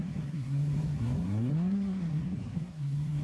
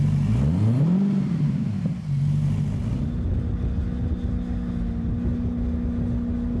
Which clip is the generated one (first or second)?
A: first